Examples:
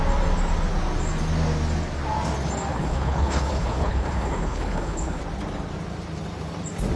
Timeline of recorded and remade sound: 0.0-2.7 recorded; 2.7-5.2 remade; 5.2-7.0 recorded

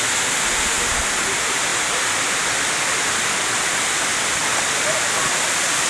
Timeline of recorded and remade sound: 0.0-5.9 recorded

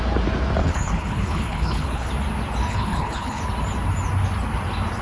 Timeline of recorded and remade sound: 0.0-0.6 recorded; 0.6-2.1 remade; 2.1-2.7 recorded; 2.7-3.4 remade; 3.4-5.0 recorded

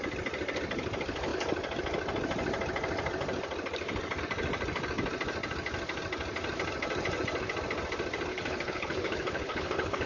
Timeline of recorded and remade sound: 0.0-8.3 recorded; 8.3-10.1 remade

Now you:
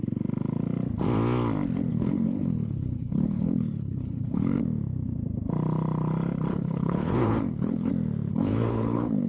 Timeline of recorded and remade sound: 0.0-1.9 recorded; 1.9-4.6 remade; 4.6-6.5 recorded; 6.5-7.9 remade; 7.9-8.3 recorded; 8.3-9.3 remade